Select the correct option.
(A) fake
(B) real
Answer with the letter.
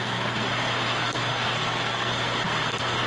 A